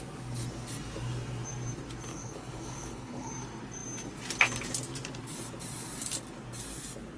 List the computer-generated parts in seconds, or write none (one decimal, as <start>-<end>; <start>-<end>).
2.1-3.3